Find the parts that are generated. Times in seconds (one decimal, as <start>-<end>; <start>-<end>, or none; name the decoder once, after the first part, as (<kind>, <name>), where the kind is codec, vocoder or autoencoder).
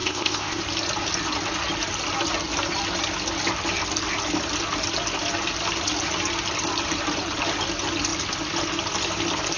0.0-0.6 (codec, ZipCodec)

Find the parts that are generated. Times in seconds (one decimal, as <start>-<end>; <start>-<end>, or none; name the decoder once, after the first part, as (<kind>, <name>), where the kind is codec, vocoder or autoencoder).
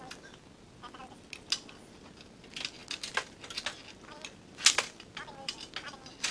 none